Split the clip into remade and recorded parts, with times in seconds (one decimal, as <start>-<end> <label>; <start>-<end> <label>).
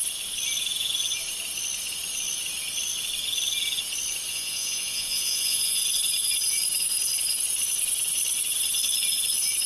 0.0-4.3 recorded; 4.3-5.8 remade; 5.8-9.7 recorded